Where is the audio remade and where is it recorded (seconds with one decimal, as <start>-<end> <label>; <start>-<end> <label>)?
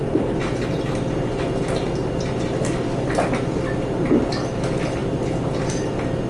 0.0-6.3 recorded